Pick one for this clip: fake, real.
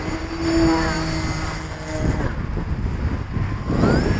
real